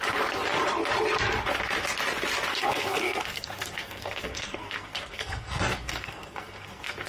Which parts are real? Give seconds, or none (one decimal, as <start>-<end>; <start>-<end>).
0.0-2.5